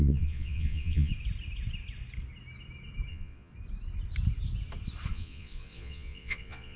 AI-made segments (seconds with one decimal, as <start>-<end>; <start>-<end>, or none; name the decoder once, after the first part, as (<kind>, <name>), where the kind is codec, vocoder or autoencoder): 0.0-1.1 (vocoder, Vocos); 3.1-3.5; 5.1-6.8